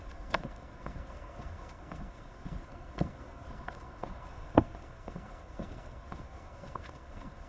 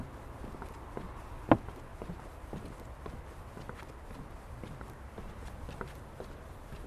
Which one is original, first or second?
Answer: second